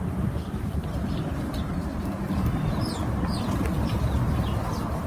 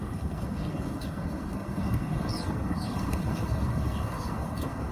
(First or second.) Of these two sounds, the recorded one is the first